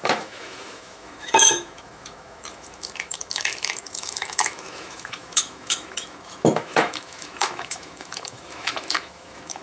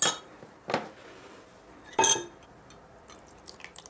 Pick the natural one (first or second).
second